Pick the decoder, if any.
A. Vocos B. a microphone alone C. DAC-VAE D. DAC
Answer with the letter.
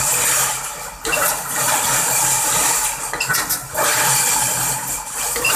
B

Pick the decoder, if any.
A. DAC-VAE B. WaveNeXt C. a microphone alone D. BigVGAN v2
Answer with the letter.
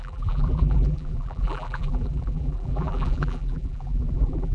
D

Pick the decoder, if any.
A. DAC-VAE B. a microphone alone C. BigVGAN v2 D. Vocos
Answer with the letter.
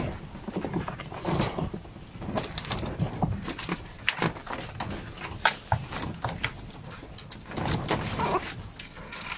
B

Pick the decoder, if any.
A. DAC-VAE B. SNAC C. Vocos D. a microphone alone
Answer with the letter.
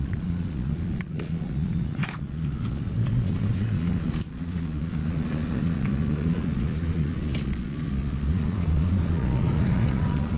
C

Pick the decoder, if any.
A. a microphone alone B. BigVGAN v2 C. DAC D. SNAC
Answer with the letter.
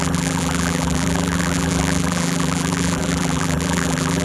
B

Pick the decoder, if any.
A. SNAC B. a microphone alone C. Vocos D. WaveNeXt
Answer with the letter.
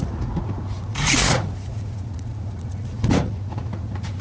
C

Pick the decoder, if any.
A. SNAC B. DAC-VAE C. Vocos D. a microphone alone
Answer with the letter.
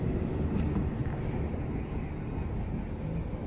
D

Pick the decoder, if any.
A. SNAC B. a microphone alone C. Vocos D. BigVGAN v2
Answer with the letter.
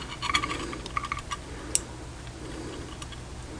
B